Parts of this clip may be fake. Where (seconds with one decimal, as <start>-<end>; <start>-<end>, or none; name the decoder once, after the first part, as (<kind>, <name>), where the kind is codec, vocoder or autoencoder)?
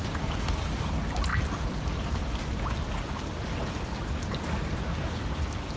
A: none